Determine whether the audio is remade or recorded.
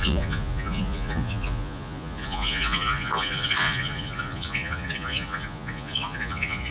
remade